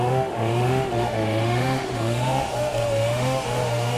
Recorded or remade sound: remade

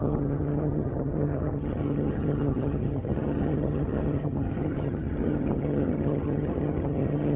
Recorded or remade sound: remade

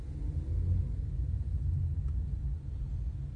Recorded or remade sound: recorded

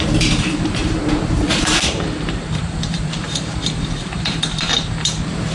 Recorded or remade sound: remade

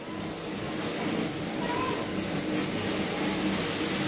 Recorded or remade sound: recorded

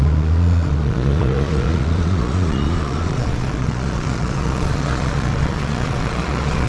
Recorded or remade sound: remade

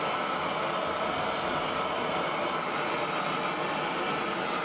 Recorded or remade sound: recorded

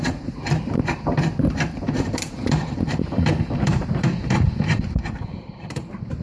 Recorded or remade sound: remade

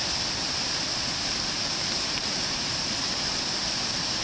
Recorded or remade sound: recorded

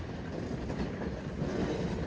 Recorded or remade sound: recorded